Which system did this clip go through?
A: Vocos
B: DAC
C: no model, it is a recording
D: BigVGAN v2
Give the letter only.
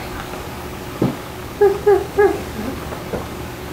B